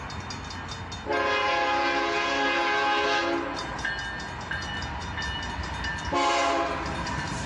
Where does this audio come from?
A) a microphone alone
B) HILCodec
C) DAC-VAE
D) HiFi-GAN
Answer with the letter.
A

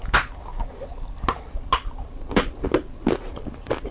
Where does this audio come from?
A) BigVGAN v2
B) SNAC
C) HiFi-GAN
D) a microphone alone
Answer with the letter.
D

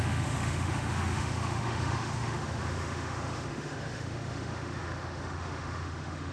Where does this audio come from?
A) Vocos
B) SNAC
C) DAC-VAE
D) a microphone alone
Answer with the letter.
C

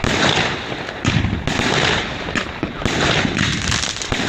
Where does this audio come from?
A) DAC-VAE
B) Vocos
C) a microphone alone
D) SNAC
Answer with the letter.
C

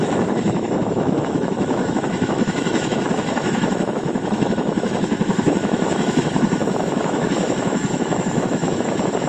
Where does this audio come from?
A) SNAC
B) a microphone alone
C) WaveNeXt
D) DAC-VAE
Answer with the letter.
D